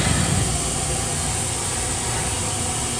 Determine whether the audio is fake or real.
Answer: real